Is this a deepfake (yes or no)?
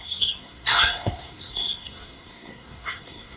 yes